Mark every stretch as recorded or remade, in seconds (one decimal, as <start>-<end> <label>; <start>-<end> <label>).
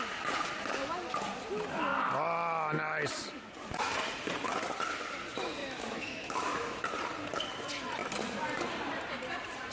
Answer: 0.0-5.6 recorded; 5.6-6.8 remade; 6.8-9.7 recorded